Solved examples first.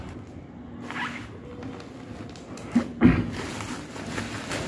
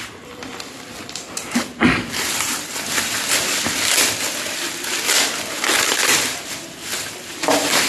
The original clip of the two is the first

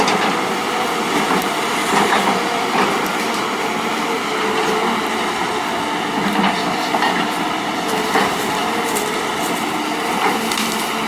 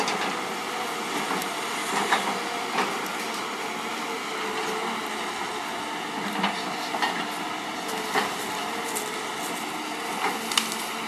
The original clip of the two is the second